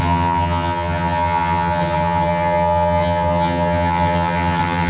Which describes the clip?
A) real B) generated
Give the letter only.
B